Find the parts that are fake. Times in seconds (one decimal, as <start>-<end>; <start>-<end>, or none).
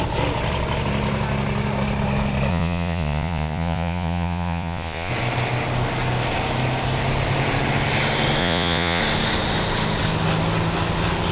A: 2.5-5.1; 8.4-9.0